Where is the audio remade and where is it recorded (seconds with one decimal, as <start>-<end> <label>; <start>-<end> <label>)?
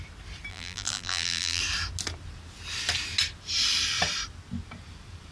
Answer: 0.0-0.5 recorded; 0.5-1.6 remade; 1.6-5.3 recorded